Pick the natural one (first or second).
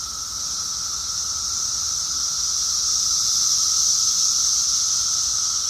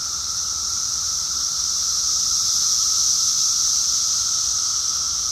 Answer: first